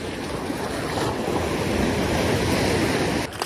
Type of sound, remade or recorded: recorded